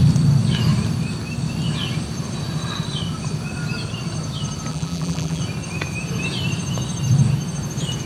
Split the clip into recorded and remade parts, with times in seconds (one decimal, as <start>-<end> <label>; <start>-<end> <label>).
0.0-4.7 recorded; 4.7-5.4 remade; 5.4-8.1 recorded